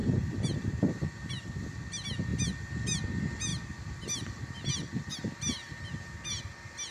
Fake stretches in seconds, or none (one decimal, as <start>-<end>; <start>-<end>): 0.0-0.7; 3.5-6.4